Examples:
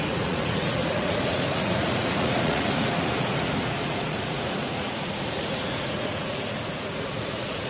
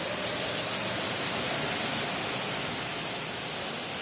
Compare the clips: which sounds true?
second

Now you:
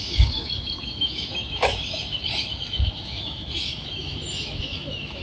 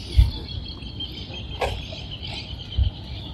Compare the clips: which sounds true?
second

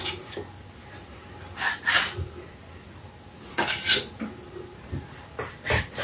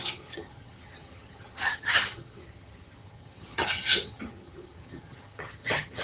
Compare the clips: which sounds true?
first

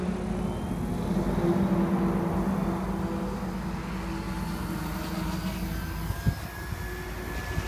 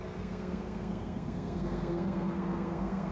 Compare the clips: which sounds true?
first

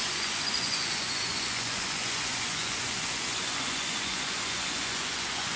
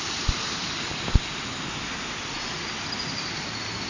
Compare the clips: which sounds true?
second